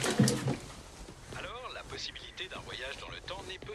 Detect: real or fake real